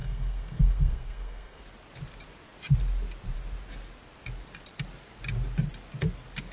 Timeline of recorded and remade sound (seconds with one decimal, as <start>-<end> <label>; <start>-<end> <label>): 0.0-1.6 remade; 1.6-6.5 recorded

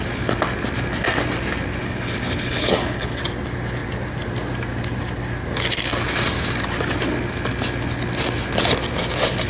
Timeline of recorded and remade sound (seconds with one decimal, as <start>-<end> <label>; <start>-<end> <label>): 0.0-1.8 recorded; 1.8-3.2 remade; 3.2-9.5 recorded

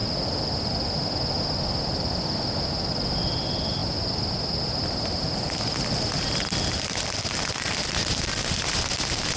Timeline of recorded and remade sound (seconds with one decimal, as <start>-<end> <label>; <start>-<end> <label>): 0.0-9.4 recorded